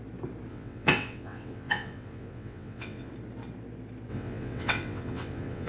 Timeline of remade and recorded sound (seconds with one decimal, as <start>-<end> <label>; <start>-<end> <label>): 0.0-0.5 recorded; 0.5-3.1 remade; 3.1-4.1 recorded; 4.1-5.7 remade